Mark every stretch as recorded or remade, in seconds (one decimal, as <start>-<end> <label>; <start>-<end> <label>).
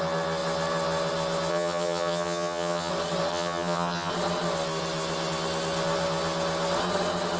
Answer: 0.0-1.5 recorded; 1.5-2.9 remade; 2.9-3.3 recorded; 3.3-4.1 remade; 4.1-7.4 recorded